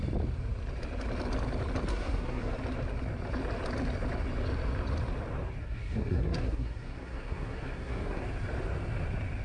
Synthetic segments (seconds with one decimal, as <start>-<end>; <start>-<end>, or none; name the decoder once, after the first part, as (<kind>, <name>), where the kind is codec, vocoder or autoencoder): 1.9-2.5 (codec, SNAC); 5.6-8.2